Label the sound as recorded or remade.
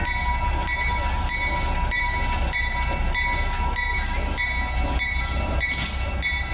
recorded